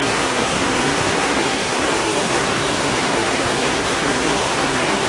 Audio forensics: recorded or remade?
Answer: remade